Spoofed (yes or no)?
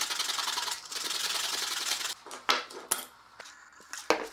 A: no